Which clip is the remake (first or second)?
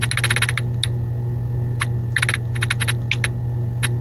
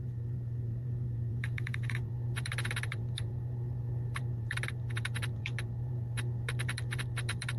second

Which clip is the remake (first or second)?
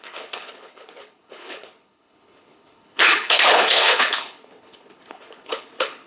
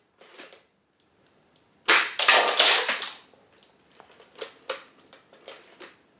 first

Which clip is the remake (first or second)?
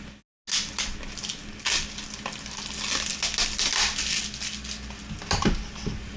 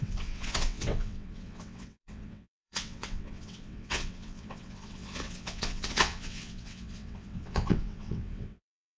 second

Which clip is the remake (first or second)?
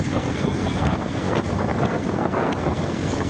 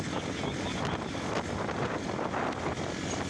first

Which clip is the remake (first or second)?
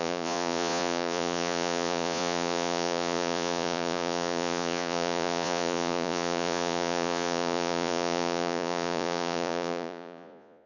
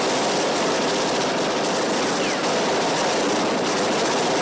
first